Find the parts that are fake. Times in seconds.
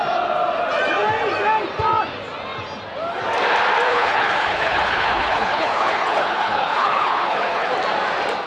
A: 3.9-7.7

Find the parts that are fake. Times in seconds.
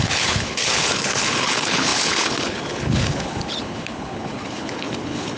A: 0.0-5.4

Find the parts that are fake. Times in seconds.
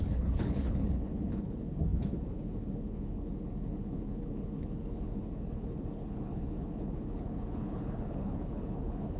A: 0.0-9.2